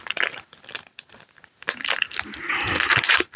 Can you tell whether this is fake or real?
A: real